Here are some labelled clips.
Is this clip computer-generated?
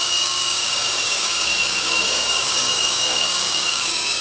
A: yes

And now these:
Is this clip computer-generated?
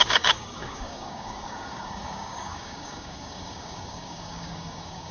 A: yes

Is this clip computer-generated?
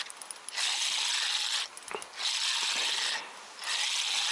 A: no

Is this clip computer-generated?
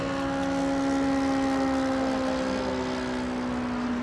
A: no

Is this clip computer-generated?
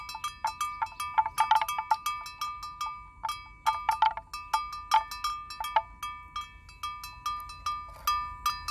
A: no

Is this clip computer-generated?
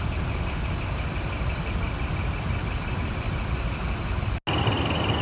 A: no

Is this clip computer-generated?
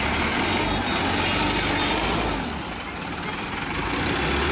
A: no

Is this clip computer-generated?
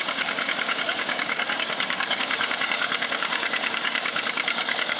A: yes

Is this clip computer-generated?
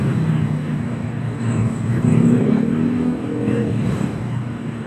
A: yes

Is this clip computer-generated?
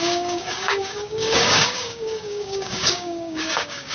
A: yes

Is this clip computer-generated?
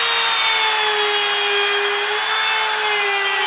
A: no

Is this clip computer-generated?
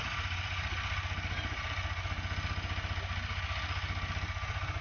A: no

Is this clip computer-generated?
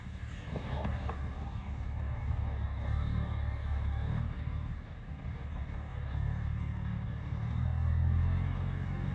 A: yes